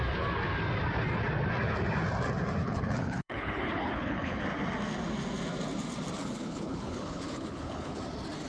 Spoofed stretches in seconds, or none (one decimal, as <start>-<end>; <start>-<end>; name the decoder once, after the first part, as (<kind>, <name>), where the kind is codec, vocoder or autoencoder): 2.6-4.4 (codec, HILCodec); 6.2-8.0